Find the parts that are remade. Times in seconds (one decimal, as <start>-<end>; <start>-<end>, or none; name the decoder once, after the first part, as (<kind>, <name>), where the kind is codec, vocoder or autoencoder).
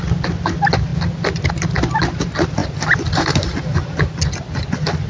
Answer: none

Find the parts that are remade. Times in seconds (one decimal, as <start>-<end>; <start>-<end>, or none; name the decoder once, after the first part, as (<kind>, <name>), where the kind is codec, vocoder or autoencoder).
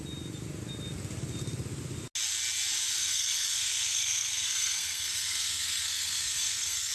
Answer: 3.0-6.9 (codec, SNAC)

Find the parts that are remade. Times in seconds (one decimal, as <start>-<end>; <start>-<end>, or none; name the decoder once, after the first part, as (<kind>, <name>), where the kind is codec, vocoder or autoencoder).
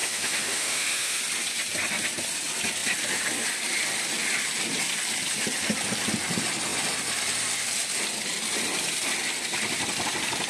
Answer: 0.0-1.2 (autoencoder, DAC-VAE)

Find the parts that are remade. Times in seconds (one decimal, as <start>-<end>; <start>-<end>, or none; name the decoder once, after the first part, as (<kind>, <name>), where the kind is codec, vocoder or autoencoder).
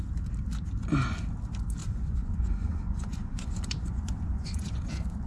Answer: 1.8-5.3 (vocoder, Vocos)